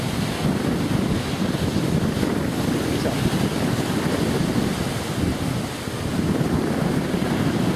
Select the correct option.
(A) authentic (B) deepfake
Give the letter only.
A